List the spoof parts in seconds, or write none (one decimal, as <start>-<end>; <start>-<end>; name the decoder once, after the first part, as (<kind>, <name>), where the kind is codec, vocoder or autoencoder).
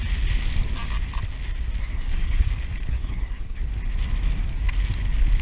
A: 1.8-2.5 (codec, SNAC); 2.9-3.6